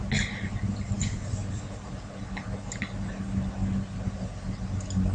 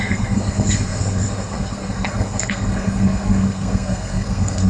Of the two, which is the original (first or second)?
first